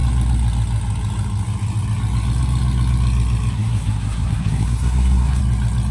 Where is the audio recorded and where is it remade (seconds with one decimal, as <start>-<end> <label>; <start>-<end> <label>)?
0.0-3.5 recorded; 3.5-5.4 remade; 5.4-5.9 recorded